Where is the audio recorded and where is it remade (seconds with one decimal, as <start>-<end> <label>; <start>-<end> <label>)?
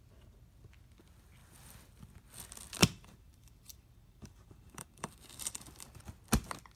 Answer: 0.0-2.8 recorded; 2.8-6.0 remade; 6.0-6.8 recorded